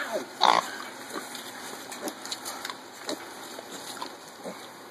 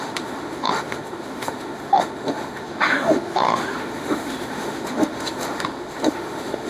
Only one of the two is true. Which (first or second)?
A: first